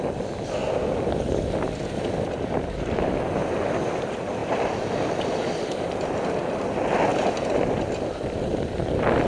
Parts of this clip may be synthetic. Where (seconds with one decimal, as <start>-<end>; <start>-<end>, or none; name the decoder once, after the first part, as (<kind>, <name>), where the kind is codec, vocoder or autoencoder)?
0.6-2.3 (vocoder, BigVGAN v2); 4.4-6.3; 7.1-9.3

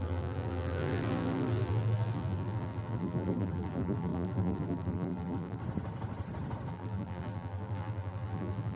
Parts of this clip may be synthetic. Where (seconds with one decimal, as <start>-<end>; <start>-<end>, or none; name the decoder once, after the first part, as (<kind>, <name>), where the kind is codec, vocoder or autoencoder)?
0.0-5.6 (vocoder, BigVGAN v2); 6.7-8.8

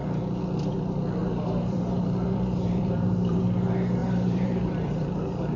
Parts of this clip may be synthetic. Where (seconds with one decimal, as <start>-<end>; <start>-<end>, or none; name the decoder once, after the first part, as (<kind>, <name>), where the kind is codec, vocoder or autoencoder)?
1.2-3.4 (vocoder, BigVGAN v2); 4.0-5.1

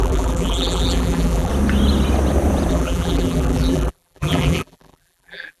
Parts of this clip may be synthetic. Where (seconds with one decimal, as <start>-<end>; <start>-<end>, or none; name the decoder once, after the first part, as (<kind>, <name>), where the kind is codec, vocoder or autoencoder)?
0.0-1.5 (vocoder, BigVGAN v2); 2.7-5.6

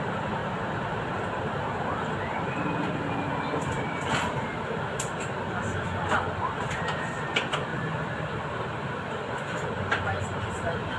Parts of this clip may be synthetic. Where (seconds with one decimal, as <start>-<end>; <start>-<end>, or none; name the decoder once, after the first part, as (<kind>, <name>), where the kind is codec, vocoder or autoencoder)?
0.0-0.4 (vocoder, BigVGAN v2); 2.7-11.0

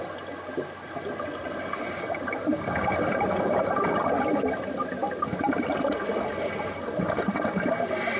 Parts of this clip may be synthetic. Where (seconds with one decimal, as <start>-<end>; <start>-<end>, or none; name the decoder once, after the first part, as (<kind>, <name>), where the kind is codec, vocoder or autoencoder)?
none

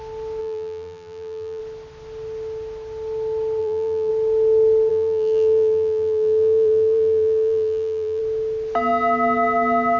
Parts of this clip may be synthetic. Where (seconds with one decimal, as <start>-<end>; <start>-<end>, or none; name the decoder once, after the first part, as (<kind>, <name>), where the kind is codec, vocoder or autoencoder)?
0.4-1.6 (vocoder, BigVGAN v2); 3.6-4.1; 4.9-8.2